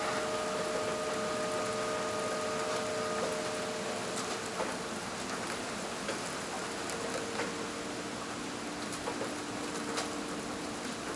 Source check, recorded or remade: recorded